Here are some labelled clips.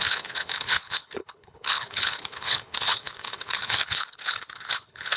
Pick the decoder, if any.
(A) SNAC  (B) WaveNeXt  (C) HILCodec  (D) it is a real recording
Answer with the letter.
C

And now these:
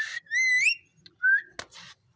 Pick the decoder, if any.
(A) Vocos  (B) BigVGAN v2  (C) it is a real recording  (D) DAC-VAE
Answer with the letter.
C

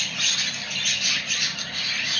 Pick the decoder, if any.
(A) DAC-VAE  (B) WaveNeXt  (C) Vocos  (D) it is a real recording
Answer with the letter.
D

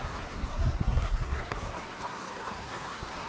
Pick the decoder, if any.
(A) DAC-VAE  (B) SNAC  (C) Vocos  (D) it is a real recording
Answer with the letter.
B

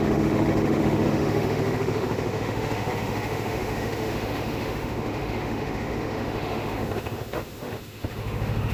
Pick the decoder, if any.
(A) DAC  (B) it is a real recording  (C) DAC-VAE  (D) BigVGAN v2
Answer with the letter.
C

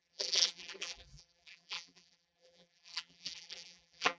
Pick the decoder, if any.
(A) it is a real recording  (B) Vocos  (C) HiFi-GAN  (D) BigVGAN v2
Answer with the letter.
D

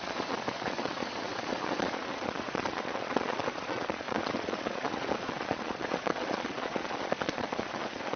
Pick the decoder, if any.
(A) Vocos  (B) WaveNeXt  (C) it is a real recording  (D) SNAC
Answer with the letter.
A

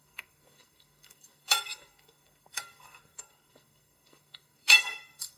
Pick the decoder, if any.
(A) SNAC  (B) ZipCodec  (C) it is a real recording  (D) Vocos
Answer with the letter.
A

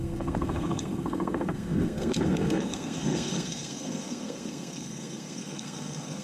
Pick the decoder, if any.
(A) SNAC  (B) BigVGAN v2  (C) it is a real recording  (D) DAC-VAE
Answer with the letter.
A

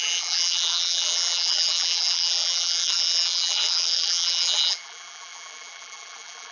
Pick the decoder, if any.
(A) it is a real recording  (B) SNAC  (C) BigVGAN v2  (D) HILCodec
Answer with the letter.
C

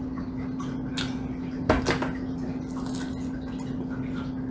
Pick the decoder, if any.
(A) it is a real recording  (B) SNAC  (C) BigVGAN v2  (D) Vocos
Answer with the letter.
A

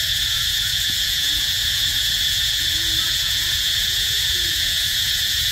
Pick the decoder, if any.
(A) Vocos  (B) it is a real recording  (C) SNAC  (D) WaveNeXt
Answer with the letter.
A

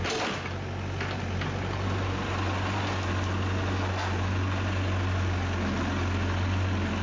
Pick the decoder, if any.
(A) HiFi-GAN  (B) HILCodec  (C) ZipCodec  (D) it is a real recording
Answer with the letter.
D